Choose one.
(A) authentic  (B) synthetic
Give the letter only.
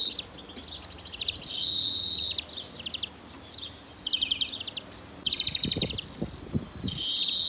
A